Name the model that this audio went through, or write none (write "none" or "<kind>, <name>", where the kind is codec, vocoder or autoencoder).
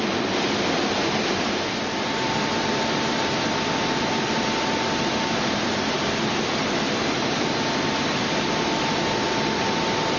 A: none